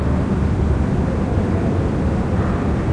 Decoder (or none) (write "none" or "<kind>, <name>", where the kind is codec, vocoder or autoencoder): none